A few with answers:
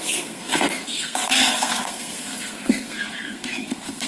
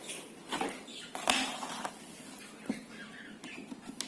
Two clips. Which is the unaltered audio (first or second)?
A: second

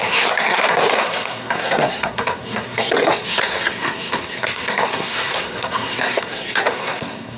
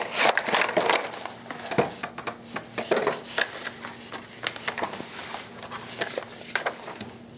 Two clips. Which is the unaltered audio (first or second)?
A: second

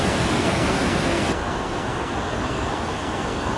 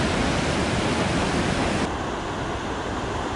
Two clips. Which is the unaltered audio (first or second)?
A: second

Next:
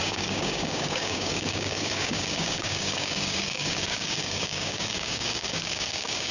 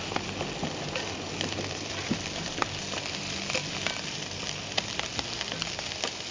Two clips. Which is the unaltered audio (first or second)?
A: second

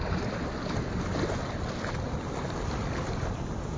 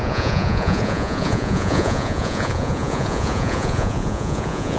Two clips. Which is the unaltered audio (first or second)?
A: first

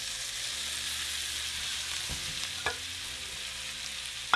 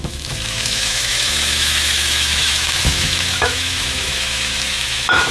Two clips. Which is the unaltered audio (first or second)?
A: first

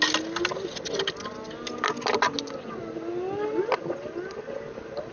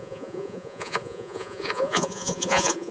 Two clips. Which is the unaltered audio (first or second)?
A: first